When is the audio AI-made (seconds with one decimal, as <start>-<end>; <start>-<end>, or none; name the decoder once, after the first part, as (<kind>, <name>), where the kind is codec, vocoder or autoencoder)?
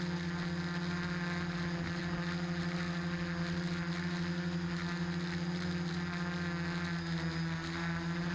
none